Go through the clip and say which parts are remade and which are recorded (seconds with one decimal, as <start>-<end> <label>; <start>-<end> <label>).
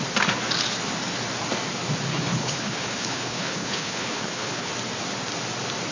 0.0-2.1 recorded; 2.1-4.7 remade; 4.7-5.9 recorded